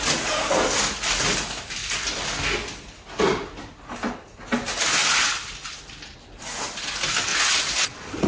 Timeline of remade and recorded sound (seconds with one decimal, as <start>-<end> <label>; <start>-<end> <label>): 0.0-8.3 recorded